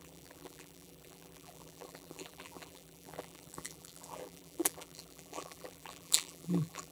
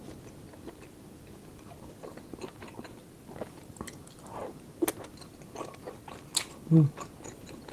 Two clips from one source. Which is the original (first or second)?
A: second